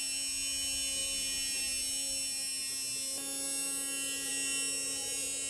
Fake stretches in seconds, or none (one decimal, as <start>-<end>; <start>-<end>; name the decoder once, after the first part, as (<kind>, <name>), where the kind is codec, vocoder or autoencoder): none

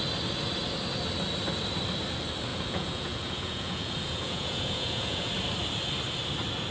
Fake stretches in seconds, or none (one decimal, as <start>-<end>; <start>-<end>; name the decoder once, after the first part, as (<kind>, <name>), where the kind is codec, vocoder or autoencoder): 2.5-5.3 (vocoder, Vocos)

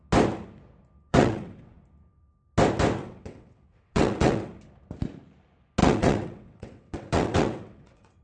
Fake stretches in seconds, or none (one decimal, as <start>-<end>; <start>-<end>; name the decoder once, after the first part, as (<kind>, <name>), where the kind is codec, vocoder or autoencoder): 1.1-1.8 (vocoder, WaveNeXt); 3.0-4.5; 5.8-8.2

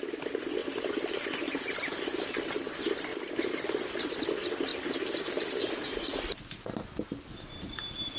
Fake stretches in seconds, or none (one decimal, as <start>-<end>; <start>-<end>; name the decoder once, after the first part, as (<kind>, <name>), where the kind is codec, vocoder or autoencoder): none

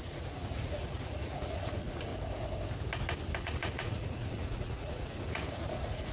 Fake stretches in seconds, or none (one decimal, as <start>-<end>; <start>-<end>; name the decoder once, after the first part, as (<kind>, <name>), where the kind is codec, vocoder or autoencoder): 0.0-2.1 (vocoder, Vocos); 3.4-6.1

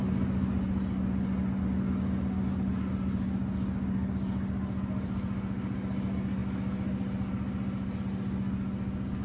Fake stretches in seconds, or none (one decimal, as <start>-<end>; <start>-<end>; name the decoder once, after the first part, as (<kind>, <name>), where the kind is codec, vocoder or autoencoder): none

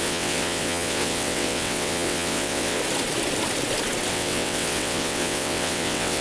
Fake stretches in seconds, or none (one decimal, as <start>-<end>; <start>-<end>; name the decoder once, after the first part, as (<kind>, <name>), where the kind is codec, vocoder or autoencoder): 0.0-2.8 (vocoder, WaveNeXt); 4.1-6.2